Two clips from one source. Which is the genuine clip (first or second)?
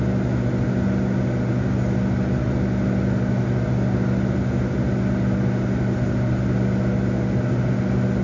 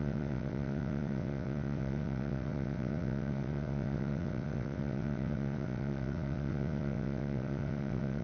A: first